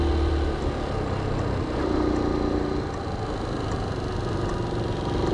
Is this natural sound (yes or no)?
yes